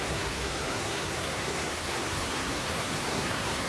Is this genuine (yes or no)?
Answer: no